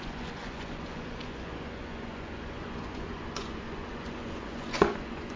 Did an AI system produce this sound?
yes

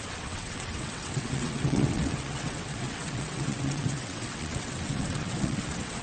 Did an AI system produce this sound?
yes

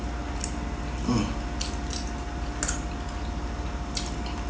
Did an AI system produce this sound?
no